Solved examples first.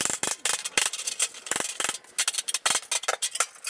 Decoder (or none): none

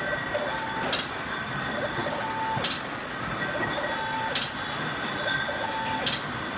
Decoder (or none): none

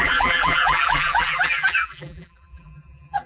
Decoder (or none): vocoder, BigVGAN v2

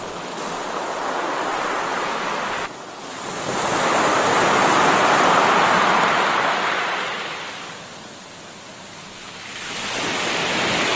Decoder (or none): none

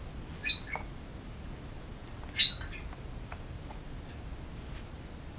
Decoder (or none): none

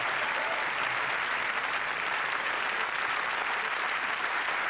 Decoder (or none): none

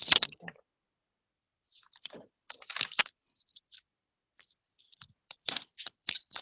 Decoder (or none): vocoder, BigVGAN v2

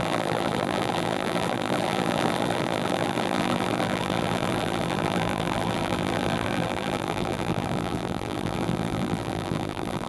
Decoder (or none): vocoder, BigVGAN v2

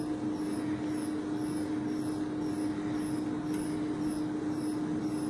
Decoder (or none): none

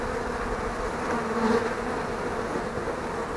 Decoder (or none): none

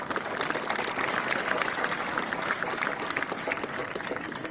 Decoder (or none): none